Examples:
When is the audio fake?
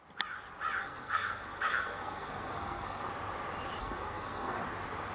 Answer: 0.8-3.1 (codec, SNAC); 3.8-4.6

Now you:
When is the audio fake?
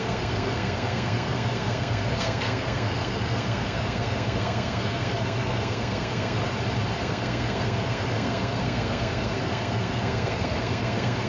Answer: 0.0-6.4 (codec, SNAC); 7.0-11.3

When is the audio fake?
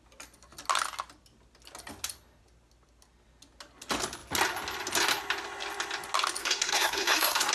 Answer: 6.4-7.5 (codec, SNAC)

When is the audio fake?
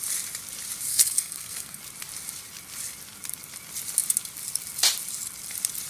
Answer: 0.9-1.8 (codec, SNAC)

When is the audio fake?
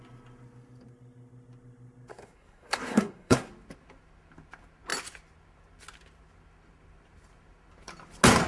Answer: 2.1-3.5 (codec, SNAC)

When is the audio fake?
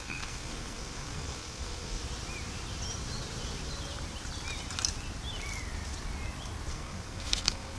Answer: 0.0-2.0 (codec, SNAC); 6.7-7.8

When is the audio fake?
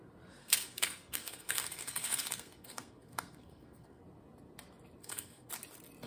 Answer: 0.4-4.0 (codec, SNAC); 5.0-5.5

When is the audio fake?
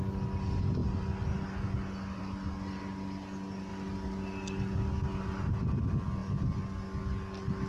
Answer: none